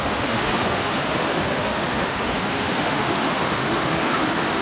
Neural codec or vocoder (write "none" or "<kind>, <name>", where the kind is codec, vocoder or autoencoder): autoencoder, DAC-VAE